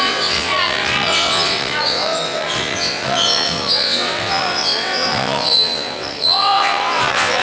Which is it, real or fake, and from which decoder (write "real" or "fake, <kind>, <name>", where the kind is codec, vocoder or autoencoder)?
fake, vocoder, WaveNeXt